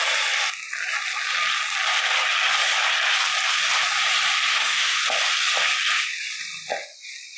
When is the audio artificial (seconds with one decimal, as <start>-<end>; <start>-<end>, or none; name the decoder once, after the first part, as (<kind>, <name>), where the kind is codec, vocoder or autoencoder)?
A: 4.5-5.0 (autoencoder, DAC-VAE)